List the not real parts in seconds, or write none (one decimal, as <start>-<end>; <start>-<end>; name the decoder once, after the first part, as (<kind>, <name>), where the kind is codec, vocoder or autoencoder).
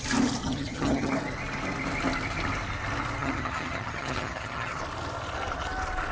0.4-1.1 (vocoder, HiFi-GAN); 3.2-4.8